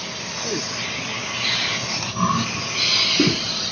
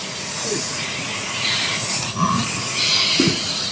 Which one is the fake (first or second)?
second